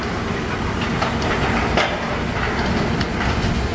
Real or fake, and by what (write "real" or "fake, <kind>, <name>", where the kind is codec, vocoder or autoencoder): real